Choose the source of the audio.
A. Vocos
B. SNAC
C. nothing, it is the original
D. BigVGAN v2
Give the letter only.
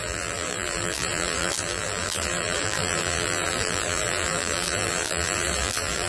D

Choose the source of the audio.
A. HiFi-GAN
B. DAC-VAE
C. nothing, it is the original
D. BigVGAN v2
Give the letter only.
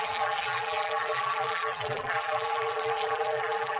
D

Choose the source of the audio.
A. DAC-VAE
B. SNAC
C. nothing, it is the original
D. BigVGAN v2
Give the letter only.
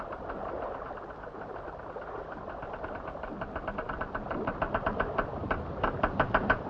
D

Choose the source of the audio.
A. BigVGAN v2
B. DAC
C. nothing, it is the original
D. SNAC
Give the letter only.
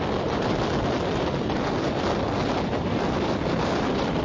C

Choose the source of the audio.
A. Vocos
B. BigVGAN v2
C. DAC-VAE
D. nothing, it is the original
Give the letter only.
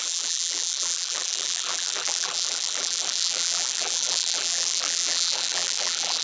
B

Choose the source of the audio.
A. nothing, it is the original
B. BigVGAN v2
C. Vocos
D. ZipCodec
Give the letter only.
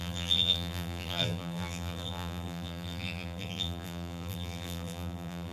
B